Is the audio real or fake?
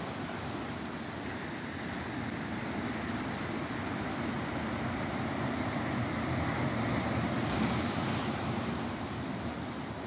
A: real